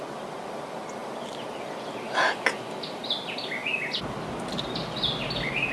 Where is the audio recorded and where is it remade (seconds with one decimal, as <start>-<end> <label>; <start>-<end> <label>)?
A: 0.0-5.7 recorded